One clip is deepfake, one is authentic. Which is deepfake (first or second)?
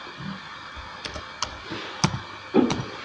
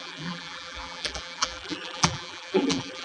second